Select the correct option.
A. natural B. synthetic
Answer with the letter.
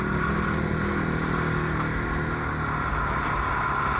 A